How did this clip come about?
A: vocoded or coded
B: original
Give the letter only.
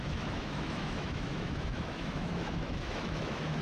A